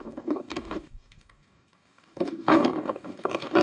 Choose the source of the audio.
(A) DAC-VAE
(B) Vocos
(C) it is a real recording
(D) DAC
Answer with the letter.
D